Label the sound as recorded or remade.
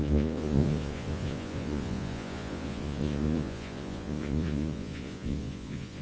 remade